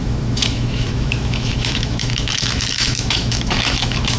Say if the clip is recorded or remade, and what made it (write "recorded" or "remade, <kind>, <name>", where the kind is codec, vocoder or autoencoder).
remade, autoencoder, DAC-VAE